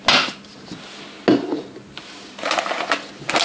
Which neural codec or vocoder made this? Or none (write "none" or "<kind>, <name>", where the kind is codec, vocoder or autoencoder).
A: none